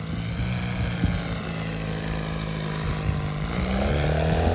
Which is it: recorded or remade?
recorded